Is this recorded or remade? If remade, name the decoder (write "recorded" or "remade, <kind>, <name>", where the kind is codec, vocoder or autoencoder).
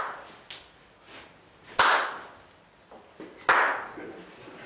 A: recorded